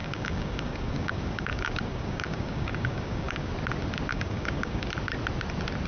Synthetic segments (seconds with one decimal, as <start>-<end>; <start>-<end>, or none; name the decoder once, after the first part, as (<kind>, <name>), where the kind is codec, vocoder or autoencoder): 0.0-3.5 (codec, DAC); 4.1-4.9